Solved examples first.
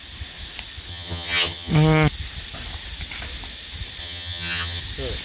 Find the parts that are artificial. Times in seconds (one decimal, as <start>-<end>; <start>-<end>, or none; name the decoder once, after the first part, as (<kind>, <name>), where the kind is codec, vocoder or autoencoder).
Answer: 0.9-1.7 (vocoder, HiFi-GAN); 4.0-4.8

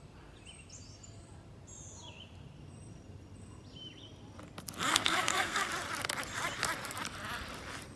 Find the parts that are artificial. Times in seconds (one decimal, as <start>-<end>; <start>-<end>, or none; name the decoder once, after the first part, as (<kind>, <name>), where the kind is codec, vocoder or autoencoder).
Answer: 4.9-5.7 (codec, SNAC)

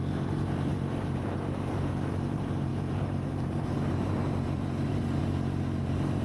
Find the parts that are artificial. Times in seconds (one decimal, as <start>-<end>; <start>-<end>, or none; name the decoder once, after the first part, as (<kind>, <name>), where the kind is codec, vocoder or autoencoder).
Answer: 0.0-6.2 (vocoder, BigVGAN v2)

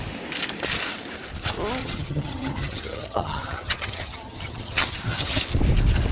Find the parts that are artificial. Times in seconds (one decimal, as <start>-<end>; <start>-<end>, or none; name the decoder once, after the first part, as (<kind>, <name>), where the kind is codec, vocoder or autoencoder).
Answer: 1.8-5.4 (vocoder, HiFi-GAN)